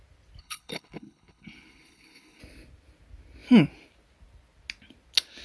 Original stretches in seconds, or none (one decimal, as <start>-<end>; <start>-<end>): 0.0-0.4; 2.4-5.4